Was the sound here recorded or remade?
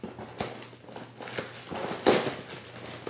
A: recorded